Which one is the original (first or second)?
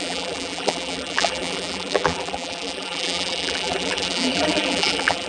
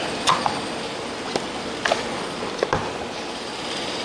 second